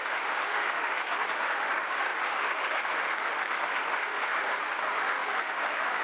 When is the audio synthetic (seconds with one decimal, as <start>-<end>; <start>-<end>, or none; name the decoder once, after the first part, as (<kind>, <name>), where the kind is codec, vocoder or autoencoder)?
0.0-6.0 (autoencoder, DAC-VAE)